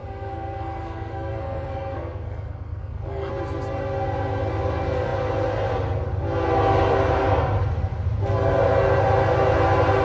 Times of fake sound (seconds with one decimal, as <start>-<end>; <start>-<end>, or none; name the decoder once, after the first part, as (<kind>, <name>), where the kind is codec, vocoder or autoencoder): 0.0-3.3 (codec, SNAC)